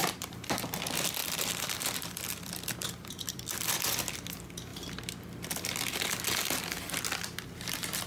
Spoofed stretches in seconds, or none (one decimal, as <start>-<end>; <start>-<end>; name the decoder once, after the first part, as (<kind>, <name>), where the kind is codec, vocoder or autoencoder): 1.2-3.8 (vocoder, BigVGAN v2)